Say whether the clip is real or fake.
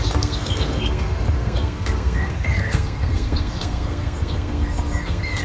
fake